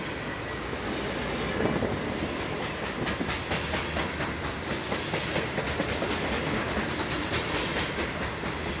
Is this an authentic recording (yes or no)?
yes